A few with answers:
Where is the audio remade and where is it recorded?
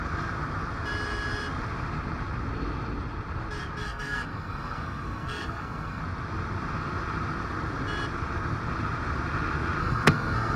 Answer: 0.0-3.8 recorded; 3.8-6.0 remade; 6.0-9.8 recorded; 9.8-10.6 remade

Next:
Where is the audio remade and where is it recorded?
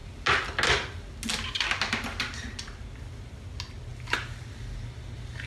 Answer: 0.0-5.5 recorded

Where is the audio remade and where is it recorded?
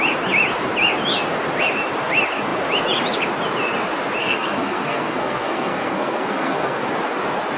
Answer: 0.0-4.2 recorded; 4.2-6.8 remade; 6.8-7.6 recorded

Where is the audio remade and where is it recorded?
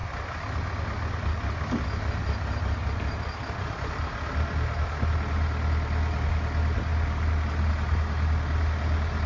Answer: 0.0-9.3 recorded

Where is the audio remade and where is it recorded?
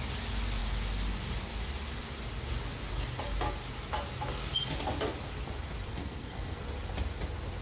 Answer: 0.0-5.9 recorded; 5.9-6.6 remade; 6.6-7.6 recorded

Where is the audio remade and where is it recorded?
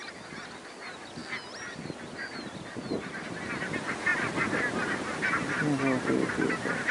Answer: 0.0-6.9 recorded